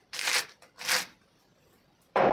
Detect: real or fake fake